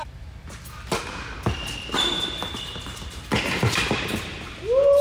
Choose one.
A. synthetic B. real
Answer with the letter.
B